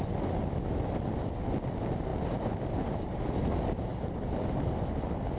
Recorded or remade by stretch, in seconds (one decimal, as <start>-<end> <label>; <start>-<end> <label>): 0.0-2.1 recorded; 2.1-3.2 remade; 3.2-5.4 recorded